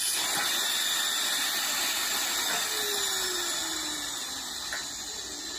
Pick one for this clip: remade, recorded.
recorded